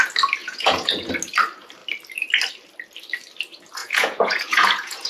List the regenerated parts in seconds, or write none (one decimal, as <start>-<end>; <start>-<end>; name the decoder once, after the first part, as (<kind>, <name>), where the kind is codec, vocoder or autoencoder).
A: 0.4-1.1 (vocoder, Vocos); 3.8-5.1